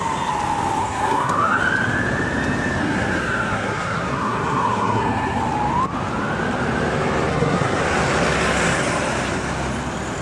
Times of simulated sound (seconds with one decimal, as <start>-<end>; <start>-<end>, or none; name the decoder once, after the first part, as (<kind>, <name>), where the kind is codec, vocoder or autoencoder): 0.8-1.6 (codec, SNAC); 2.8-5.4; 7.3-7.8